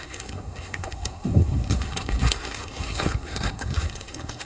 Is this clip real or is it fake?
fake